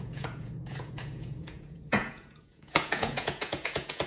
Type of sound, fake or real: fake